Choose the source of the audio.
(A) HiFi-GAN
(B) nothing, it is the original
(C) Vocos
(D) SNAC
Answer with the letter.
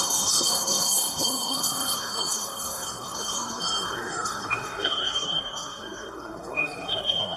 D